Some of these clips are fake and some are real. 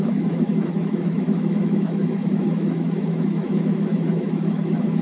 fake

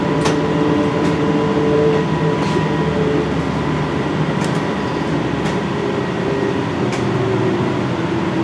real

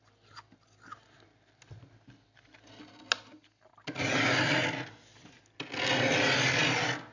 real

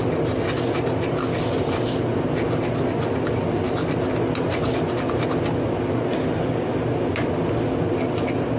real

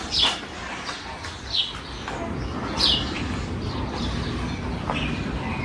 real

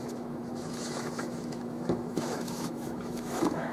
fake